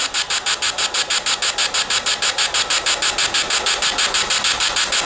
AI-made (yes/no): no